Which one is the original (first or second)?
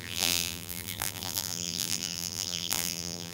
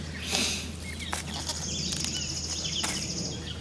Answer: second